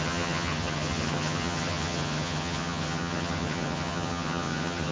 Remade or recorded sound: remade